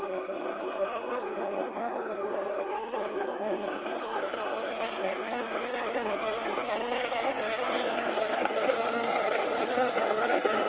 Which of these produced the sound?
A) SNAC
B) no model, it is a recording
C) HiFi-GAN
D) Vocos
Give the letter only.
A